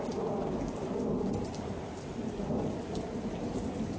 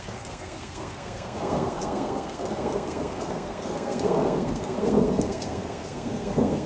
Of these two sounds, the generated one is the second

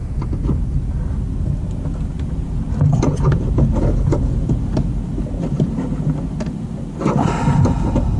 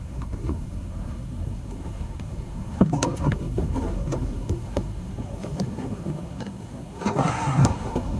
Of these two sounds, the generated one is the second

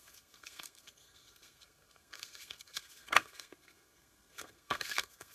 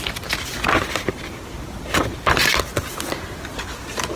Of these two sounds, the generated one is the first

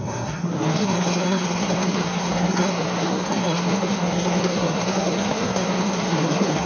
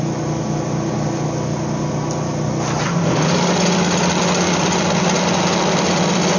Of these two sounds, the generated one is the first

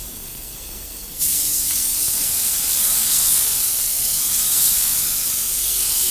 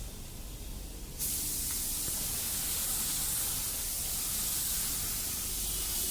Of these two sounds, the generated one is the first